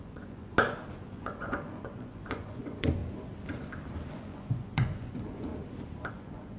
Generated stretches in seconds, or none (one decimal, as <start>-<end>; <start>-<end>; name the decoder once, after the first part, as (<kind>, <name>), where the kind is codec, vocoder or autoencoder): 0.0-0.5 (vocoder, Vocos); 1.1-3.0; 4.1-5.5; 6.1-6.6

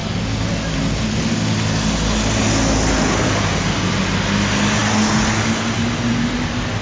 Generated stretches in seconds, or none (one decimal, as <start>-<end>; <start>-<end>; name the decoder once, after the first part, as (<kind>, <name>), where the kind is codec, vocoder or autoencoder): none

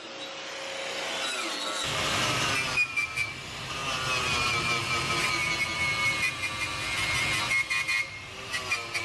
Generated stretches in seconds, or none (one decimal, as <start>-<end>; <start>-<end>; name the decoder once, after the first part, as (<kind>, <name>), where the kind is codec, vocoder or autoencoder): none

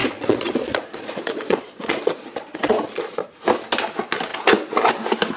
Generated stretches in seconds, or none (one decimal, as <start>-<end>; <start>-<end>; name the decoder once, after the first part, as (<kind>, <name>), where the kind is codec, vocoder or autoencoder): 0.0-3.2 (vocoder, Vocos)

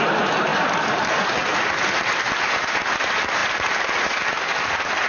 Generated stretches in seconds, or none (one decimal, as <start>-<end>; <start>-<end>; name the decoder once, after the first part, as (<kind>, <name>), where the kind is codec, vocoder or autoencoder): none

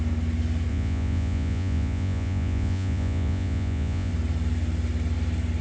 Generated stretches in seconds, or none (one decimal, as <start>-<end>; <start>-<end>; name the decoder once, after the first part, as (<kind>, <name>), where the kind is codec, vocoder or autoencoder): 0.7-4.1 (vocoder, Vocos)